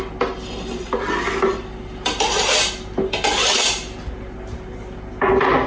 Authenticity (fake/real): real